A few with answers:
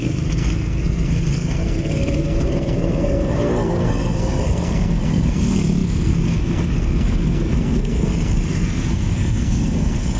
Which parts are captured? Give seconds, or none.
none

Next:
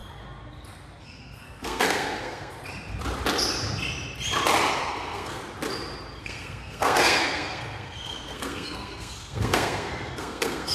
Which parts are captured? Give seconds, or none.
0.0-1.0; 2.6-4.8; 5.4-6.2

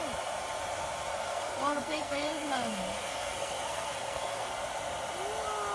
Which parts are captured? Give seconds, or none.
0.0-1.1; 4.5-5.7

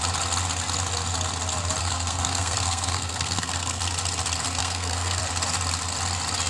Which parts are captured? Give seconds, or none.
0.0-1.8; 3.8-4.6; 5.2-6.5

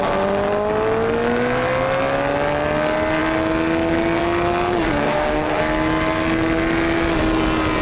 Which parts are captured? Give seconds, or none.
0.0-5.0; 5.6-7.8